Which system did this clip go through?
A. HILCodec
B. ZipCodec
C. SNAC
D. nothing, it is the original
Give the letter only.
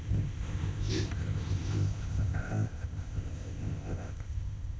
B